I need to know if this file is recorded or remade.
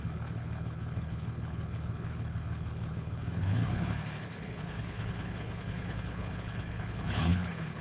remade